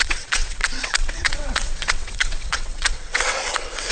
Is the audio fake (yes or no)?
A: yes